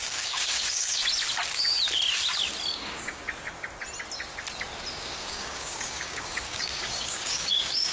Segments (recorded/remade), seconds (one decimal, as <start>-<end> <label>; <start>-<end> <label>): 0.0-1.0 remade; 1.0-2.7 recorded; 2.7-3.2 remade; 3.2-4.9 recorded; 4.9-7.9 remade